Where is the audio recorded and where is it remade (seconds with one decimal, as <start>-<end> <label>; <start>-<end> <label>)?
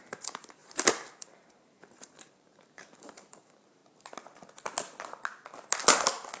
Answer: 0.0-3.8 remade; 3.8-6.4 recorded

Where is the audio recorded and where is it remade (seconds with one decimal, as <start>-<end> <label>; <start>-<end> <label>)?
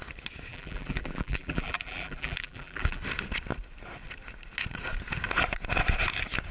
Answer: 0.0-0.5 recorded; 0.5-3.0 remade; 3.0-6.5 recorded